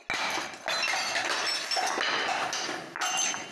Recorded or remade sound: recorded